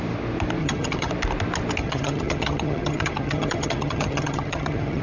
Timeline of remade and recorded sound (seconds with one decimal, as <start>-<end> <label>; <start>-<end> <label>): 0.0-0.6 recorded; 0.6-1.1 remade; 1.1-1.8 recorded; 1.8-5.0 remade